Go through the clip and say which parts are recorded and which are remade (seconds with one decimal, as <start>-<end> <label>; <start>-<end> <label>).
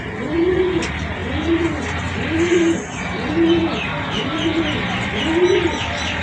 0.0-6.2 recorded